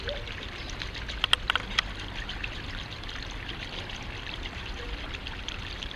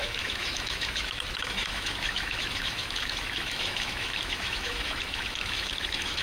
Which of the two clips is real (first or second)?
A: first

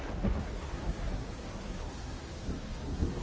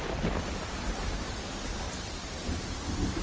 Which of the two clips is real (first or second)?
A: second